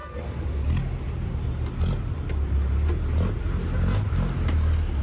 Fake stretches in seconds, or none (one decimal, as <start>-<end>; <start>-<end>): none